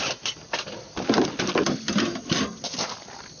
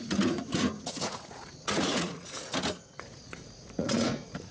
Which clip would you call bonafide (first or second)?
first